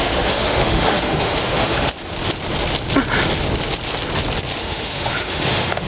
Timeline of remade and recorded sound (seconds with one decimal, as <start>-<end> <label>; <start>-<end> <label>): 0.0-1.9 remade; 1.9-4.6 recorded; 4.6-5.9 remade